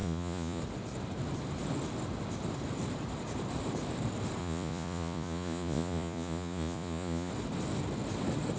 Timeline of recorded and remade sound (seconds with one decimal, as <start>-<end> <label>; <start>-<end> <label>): 0.0-0.6 remade; 0.6-4.4 recorded; 4.4-7.3 remade; 7.3-8.6 recorded